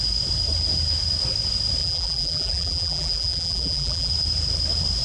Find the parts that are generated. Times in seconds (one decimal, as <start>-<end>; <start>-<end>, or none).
1.8-4.1